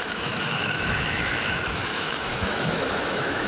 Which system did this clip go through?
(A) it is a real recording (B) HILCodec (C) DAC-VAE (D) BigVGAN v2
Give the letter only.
C